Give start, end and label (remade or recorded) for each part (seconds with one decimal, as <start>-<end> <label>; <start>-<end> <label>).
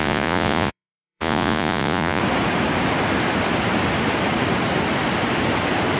0.0-2.2 remade; 2.2-6.0 recorded